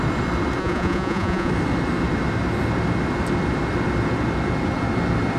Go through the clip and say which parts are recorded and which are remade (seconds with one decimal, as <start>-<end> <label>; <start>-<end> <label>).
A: 0.0-0.6 recorded; 0.6-1.5 remade; 1.5-5.4 recorded

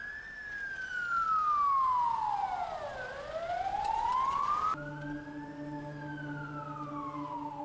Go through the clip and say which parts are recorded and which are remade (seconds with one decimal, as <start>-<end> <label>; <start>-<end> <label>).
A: 0.0-7.6 recorded

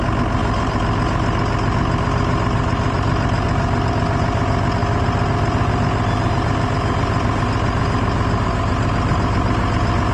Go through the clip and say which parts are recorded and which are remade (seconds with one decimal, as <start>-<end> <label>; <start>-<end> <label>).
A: 0.0-0.4 recorded; 0.4-3.9 remade; 3.9-10.1 recorded

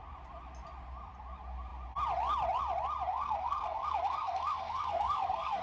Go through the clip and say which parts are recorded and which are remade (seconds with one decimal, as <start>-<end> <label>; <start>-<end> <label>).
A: 0.0-3.1 recorded; 3.1-5.6 remade

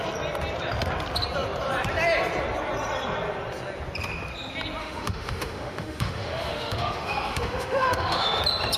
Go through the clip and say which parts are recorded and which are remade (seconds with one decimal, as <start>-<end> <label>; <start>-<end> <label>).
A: 0.0-4.8 recorded; 4.8-8.4 remade; 8.4-8.8 recorded